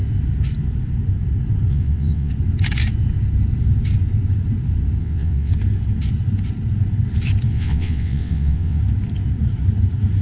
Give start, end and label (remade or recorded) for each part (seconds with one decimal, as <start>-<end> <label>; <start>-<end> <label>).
0.0-1.7 recorded; 1.7-2.3 remade; 2.3-5.0 recorded; 5.0-5.5 remade; 5.5-7.5 recorded; 7.5-8.8 remade; 8.8-10.2 recorded